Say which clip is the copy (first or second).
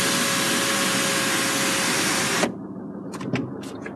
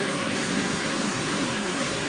second